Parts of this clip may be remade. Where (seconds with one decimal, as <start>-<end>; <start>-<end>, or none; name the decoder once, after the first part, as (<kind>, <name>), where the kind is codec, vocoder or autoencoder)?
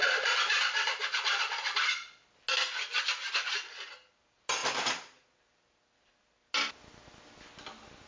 none